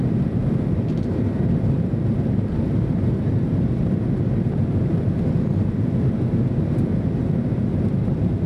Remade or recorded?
remade